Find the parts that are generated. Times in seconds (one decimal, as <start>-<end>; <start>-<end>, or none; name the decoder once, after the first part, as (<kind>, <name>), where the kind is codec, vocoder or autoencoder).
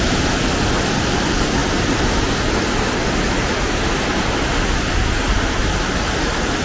none